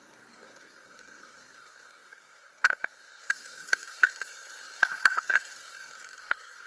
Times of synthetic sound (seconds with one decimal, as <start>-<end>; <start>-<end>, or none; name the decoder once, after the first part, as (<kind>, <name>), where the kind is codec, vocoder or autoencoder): 0.0-6.7 (codec, SNAC)